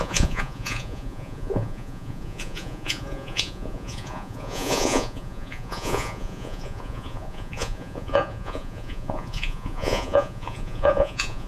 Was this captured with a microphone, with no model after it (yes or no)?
no